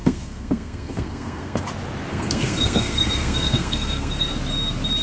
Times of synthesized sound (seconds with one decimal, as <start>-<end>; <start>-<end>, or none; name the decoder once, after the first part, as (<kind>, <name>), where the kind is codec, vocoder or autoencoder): 0.0-1.6 (codec, SNAC); 2.1-4.3